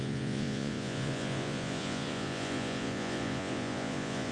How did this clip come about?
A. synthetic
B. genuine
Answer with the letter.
A